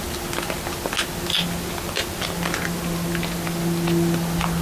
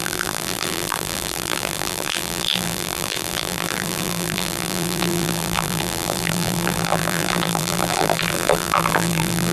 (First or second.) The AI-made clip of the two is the second